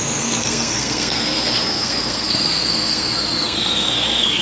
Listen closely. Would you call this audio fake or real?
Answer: fake